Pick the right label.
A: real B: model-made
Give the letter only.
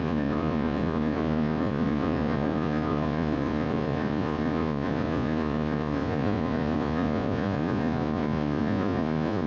B